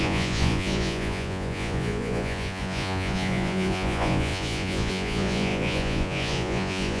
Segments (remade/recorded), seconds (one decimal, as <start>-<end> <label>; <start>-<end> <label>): 0.0-7.0 remade